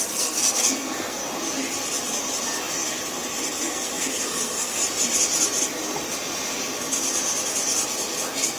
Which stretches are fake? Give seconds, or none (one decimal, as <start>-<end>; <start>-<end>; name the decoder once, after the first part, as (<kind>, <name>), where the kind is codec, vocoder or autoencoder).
0.0-1.2 (codec, SNAC); 3.6-4.8